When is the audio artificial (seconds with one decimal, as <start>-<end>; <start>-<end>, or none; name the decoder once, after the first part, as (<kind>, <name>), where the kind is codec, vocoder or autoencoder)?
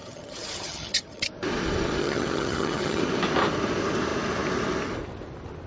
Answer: 0.0-1.3 (vocoder, HiFi-GAN); 2.0-3.0